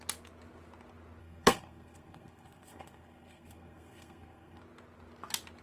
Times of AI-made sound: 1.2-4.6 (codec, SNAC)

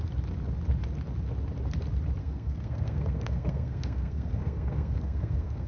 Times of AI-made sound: 2.2-5.7 (codec, SNAC)

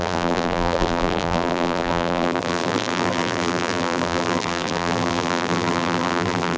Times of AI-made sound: 0.0-6.6 (vocoder, BigVGAN v2)